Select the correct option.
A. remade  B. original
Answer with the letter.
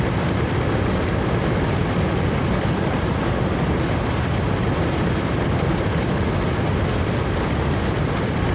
B